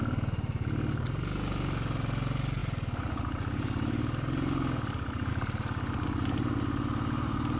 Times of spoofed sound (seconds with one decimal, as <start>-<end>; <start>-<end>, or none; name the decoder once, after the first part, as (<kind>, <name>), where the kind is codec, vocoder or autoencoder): none